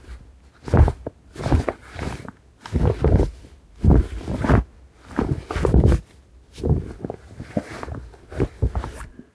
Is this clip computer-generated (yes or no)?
no